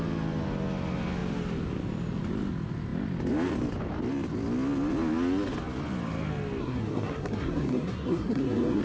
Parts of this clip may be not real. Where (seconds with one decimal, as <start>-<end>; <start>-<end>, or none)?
6.6-8.8